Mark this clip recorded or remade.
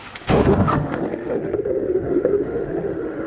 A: remade